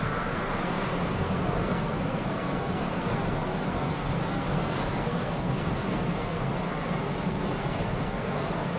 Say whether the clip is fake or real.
fake